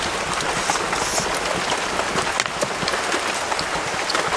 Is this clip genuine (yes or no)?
yes